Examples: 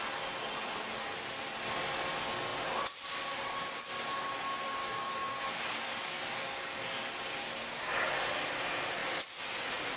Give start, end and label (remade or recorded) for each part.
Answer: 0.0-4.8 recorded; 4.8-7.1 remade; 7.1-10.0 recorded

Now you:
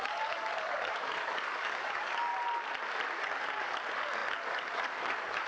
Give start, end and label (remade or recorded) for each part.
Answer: 0.0-2.3 remade; 2.3-3.2 recorded; 3.2-5.5 remade

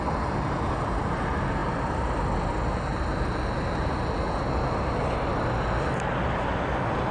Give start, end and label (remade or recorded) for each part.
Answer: 0.0-7.1 recorded

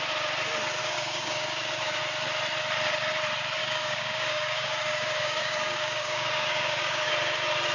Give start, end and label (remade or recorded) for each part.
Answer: 0.0-0.8 recorded; 0.8-2.0 remade; 2.0-3.6 recorded; 3.6-7.1 remade; 7.1-7.7 recorded